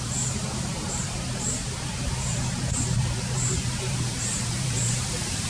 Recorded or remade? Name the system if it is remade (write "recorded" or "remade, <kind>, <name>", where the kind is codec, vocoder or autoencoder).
remade, vocoder, BigVGAN v2